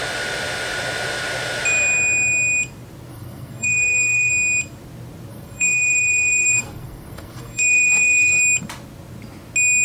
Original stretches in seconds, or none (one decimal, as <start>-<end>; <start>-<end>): 0.0-3.1; 4.3-5.3; 8.4-9.8

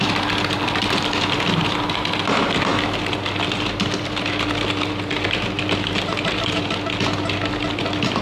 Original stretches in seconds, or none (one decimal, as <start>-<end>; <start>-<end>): 0.0-8.2

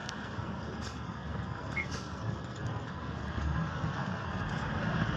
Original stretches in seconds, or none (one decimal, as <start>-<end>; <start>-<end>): none

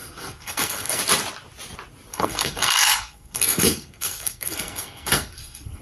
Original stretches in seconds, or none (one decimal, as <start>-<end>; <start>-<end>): 1.0-2.1

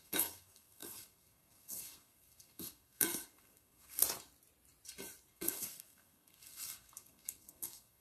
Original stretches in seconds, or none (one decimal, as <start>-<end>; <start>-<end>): 4.0-5.3